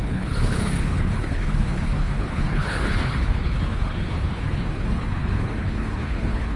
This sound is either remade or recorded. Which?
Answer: remade